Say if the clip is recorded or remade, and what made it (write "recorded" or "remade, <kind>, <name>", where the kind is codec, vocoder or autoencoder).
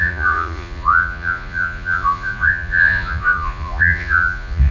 remade, vocoder, Vocos